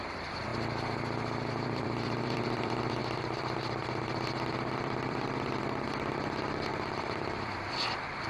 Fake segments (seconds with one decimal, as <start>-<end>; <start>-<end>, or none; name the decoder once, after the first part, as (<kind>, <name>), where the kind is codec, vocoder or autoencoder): 0.0-0.5 (vocoder, BigVGAN v2); 1.5-8.3